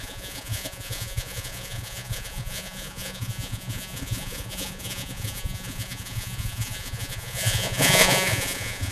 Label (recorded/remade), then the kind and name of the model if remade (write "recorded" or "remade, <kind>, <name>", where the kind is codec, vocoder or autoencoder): remade, vocoder, Vocos